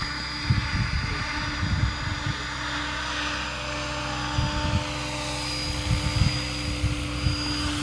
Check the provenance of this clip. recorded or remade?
recorded